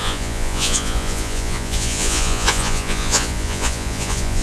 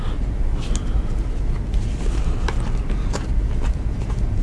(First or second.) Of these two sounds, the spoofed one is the first